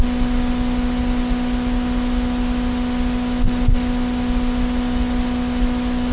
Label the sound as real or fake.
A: real